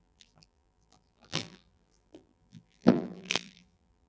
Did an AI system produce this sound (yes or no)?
yes